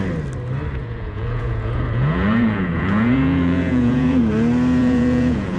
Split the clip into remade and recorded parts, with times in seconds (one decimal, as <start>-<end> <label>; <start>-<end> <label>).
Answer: 0.0-0.8 recorded; 0.8-4.2 remade; 4.2-4.8 recorded; 4.8-5.6 remade